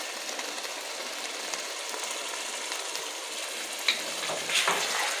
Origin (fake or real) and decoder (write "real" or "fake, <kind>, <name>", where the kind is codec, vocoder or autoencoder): real